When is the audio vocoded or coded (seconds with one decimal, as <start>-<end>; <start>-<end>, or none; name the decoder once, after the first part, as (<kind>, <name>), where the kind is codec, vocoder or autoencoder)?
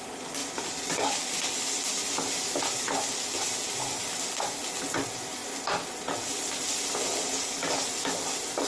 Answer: none